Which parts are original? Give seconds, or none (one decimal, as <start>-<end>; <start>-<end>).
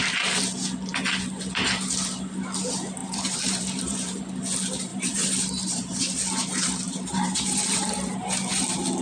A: 0.0-3.0; 4.2-4.9; 8.1-9.0